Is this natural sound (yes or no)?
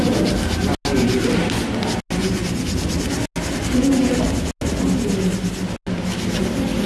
yes